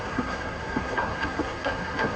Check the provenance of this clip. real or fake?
fake